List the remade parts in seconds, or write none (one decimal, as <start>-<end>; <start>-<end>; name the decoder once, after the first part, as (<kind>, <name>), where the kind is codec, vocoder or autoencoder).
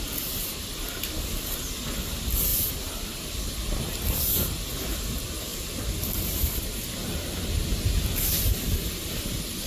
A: none